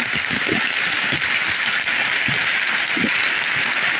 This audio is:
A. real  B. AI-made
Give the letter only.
A